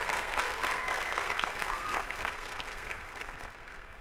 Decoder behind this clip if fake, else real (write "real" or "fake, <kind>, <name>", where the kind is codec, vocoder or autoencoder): fake, codec, SNAC